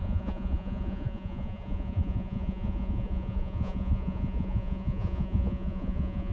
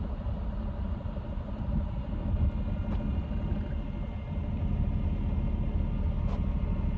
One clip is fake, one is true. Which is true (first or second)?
second